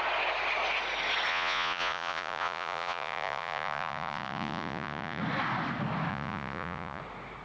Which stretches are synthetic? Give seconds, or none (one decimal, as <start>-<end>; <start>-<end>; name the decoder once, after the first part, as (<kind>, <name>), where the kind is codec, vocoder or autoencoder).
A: 1.3-5.2 (vocoder, Vocos); 6.1-7.0